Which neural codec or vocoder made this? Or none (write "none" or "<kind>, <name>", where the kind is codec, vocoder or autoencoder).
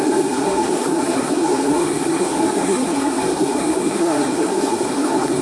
codec, SNAC